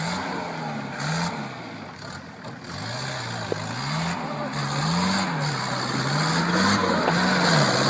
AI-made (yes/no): no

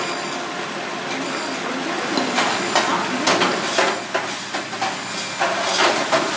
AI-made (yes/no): no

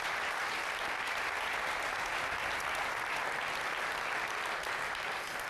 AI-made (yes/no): no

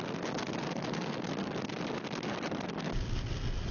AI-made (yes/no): no